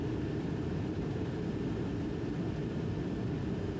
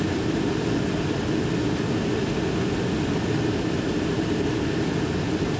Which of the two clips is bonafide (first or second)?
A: second